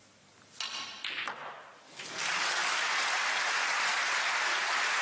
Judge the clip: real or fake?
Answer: real